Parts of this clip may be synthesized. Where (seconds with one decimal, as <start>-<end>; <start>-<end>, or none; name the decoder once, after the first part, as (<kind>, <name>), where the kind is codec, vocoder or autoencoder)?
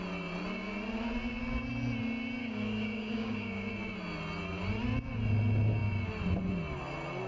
2.4-3.7 (codec, DAC)